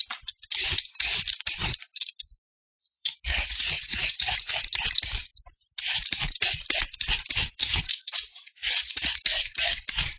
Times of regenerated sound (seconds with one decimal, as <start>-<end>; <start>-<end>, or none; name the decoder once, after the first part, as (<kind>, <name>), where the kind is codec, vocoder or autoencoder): 2.7-4.5 (vocoder, Vocos); 7.6-9.2